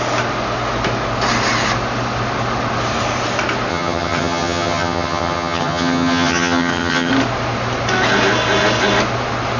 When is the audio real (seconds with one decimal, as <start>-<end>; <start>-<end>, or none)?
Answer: 0.0-3.7; 7.1-9.6